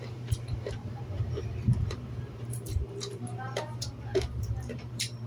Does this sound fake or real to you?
fake